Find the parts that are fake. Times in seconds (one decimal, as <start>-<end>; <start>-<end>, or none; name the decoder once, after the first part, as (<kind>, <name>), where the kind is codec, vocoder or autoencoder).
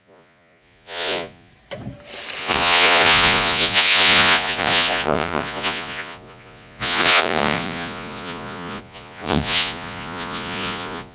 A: 0.0-1.5 (vocoder, Vocos); 2.4-11.1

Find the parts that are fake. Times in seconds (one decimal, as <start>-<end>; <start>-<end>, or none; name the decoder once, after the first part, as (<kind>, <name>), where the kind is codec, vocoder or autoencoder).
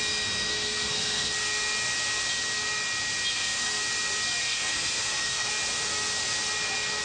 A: 0.5-1.3 (codec, SNAC); 3.3-3.8; 4.4-5.5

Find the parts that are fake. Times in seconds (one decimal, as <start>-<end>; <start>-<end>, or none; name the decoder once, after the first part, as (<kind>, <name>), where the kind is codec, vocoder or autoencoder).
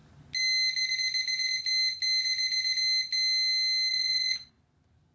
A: 3.9-4.5 (vocoder, Vocos)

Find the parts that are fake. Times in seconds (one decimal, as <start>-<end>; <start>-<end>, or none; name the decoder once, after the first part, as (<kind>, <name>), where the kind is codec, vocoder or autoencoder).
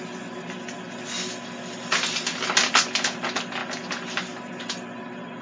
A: none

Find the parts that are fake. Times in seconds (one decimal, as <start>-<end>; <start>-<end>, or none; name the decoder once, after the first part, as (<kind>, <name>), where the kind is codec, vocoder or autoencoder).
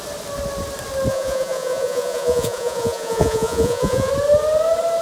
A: 1.1-4.1 (vocoder, Vocos)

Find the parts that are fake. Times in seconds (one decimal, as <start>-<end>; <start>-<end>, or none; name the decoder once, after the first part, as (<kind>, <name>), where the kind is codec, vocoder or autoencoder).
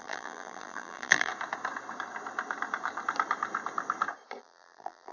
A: 0.0-1.3 (vocoder, BigVGAN v2); 4.4-5.1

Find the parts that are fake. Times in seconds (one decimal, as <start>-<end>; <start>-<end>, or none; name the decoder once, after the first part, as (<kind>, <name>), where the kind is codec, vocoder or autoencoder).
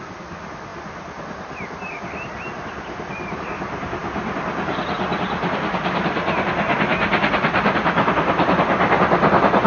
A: none